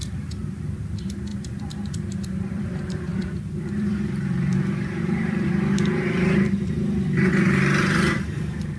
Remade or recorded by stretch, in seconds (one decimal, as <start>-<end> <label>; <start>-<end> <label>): 0.0-8.8 remade